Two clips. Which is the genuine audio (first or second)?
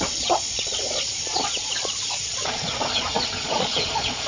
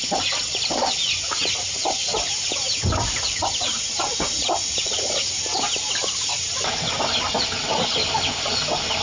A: second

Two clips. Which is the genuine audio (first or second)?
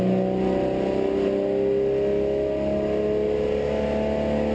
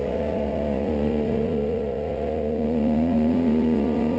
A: first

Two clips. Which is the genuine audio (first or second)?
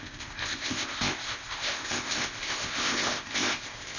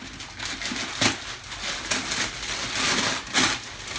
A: second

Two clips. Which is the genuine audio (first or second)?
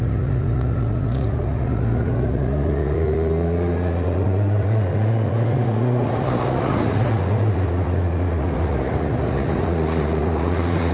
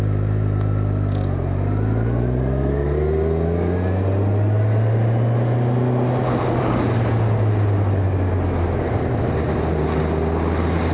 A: second